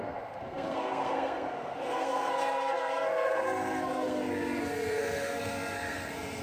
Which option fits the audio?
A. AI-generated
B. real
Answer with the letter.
A